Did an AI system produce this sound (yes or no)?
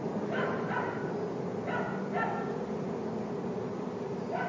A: no